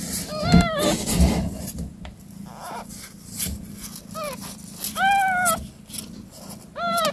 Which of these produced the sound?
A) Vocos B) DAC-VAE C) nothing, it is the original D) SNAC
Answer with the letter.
C